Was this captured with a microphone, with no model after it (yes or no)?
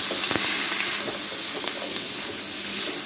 yes